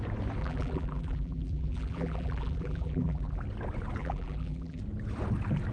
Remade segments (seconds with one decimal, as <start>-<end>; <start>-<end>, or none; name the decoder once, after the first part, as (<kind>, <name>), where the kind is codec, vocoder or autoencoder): 0.4-3.4 (vocoder, BigVGAN v2); 4.0-4.8